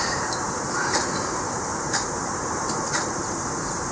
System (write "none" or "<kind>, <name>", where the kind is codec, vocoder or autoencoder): vocoder, BigVGAN v2